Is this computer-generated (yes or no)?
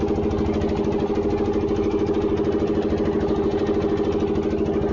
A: no